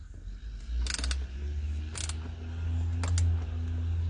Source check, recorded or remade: recorded